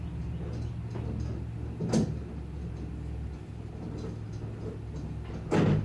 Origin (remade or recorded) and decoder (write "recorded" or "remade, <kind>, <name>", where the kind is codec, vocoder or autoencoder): recorded